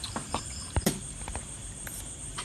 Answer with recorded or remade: remade